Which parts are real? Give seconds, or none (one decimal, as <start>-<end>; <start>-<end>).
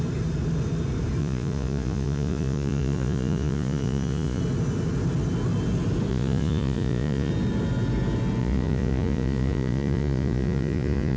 0.0-1.2; 4.4-6.1; 7.3-8.4